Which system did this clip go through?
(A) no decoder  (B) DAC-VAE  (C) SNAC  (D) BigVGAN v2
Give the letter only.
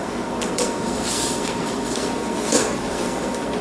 C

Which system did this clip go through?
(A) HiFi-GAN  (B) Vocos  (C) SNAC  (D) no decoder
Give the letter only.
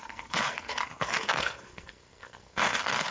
C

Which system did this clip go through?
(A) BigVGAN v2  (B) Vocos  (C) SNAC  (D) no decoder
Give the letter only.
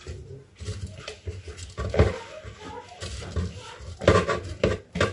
D